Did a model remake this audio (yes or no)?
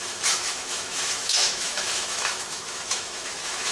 yes